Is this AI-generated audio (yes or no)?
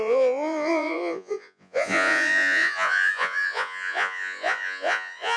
yes